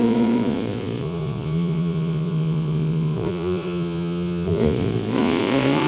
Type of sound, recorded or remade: remade